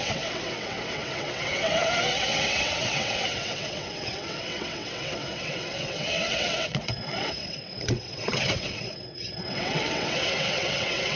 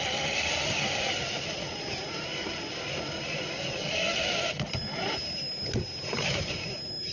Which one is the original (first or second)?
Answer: second